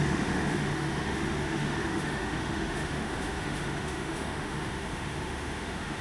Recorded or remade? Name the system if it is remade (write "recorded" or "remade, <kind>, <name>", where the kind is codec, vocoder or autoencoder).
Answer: remade, autoencoder, DAC-VAE